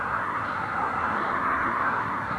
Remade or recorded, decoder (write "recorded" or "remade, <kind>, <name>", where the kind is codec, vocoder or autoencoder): remade, codec, SNAC